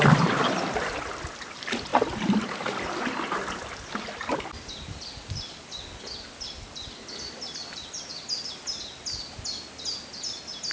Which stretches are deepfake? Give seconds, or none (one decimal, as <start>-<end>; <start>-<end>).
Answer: none